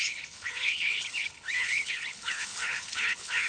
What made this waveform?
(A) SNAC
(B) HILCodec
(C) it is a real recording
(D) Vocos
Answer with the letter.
B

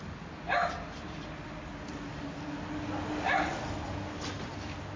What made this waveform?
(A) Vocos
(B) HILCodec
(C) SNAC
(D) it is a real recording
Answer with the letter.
D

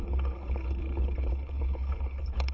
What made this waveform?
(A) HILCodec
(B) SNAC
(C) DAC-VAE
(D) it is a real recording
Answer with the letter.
A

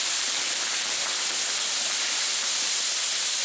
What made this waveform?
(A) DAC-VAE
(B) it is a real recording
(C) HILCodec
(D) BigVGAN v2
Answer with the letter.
B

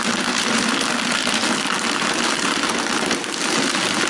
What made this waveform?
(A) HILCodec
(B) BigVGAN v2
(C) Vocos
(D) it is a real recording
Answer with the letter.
D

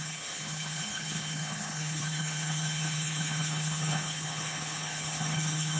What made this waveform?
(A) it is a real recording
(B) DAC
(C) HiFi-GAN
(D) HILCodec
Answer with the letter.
D